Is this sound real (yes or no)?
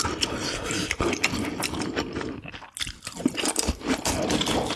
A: yes